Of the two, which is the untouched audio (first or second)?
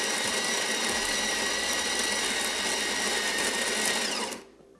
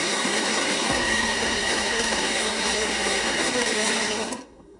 first